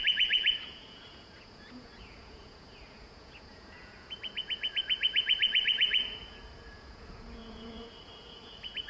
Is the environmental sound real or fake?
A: fake